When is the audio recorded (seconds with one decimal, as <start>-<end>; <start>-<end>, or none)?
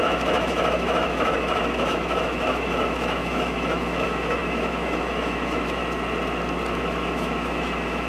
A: 5.8-6.7